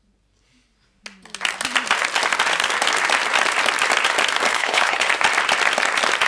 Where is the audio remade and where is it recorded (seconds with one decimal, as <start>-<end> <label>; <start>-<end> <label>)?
0.0-4.5 recorded; 4.5-5.1 remade; 5.1-6.3 recorded